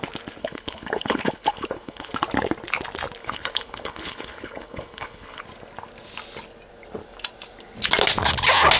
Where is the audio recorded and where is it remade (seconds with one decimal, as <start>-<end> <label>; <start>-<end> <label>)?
0.0-0.4 recorded; 0.4-2.1 remade; 2.1-3.2 recorded; 3.2-5.4 remade; 5.4-8.8 recorded